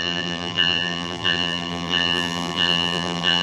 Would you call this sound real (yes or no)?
no